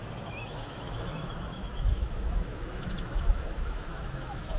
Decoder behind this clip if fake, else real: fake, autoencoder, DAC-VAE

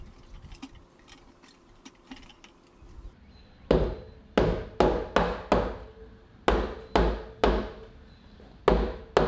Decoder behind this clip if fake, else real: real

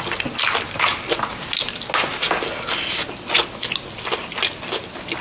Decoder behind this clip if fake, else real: real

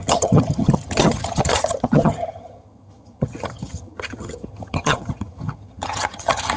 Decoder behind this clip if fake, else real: fake, vocoder, HiFi-GAN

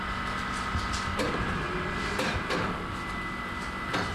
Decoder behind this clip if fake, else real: real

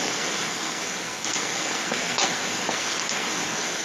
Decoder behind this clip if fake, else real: fake, codec, SNAC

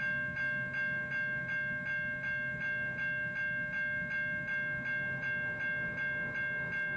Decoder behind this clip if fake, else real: real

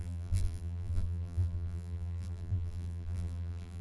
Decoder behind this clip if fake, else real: fake, vocoder, BigVGAN v2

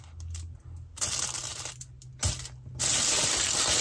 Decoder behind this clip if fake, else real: real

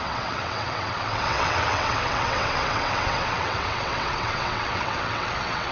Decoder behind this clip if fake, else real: fake, vocoder, WaveNeXt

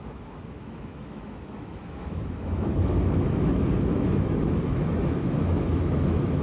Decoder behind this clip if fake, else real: fake, autoencoder, DAC-VAE